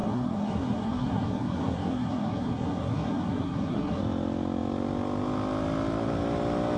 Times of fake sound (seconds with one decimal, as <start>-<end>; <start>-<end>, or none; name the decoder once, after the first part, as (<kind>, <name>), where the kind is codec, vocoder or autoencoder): 0.0-4.0 (codec, SNAC)